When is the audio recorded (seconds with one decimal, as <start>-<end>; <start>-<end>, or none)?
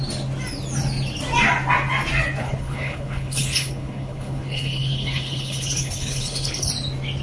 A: 0.0-2.4; 6.7-7.2